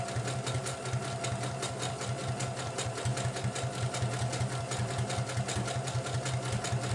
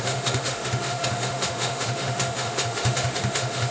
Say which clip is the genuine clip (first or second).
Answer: first